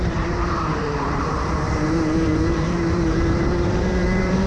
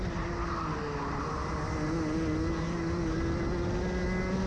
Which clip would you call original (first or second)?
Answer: second